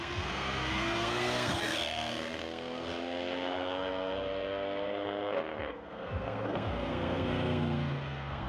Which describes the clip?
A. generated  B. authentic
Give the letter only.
A